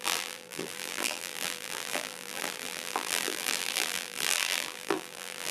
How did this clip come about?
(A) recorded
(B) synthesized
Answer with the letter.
B